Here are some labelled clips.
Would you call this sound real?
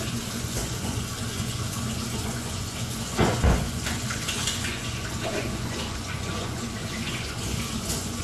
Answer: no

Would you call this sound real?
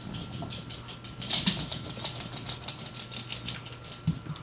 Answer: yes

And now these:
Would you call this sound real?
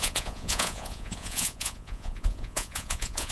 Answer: no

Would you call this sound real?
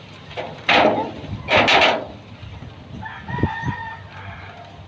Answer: yes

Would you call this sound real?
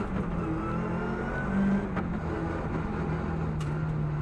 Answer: yes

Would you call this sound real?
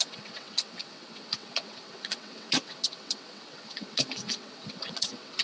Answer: no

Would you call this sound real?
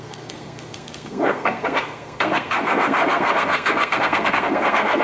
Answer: no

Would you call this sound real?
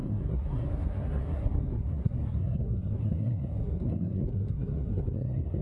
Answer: no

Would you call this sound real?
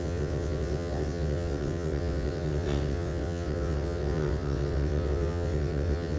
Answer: no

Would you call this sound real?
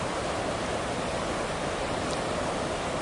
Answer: no